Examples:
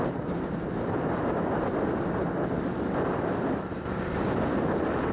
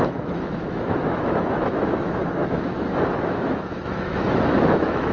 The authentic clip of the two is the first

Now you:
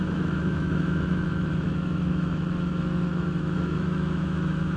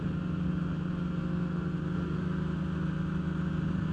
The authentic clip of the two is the second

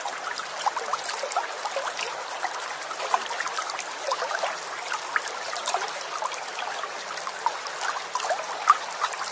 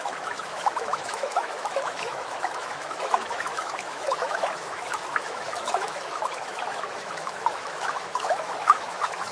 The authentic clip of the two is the first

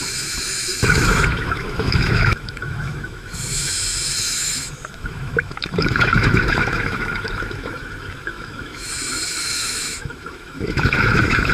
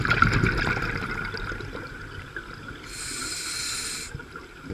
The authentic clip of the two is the second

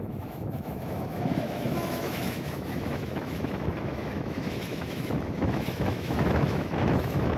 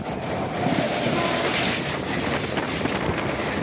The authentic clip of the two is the second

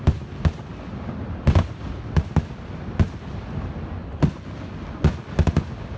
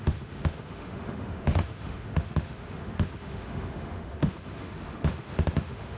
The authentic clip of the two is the first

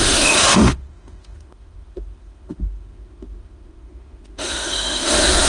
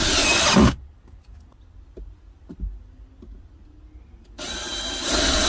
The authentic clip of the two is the second